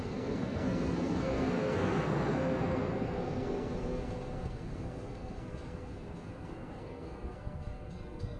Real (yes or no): no